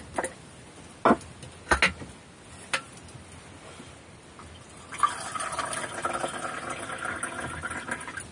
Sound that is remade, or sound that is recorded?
recorded